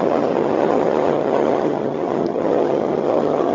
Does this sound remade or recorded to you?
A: remade